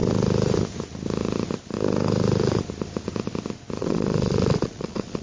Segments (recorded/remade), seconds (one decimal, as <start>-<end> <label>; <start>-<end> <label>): 0.0-3.8 recorded; 3.8-5.2 remade